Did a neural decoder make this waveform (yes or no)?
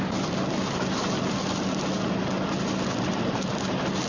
no